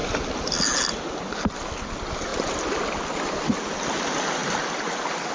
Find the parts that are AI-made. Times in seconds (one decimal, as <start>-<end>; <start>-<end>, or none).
none